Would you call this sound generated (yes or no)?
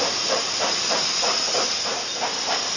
no